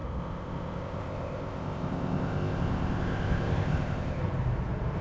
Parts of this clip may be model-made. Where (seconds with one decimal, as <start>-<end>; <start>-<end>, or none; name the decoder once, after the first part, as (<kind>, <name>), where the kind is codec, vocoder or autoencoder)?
0.0-4.2 (codec, ZipCodec)